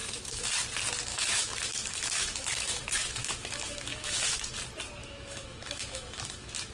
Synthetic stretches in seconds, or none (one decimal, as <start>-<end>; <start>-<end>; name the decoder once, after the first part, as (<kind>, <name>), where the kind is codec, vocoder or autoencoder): 0.0-0.5 (autoencoder, DAC-VAE); 1.1-4.4; 5.0-6.7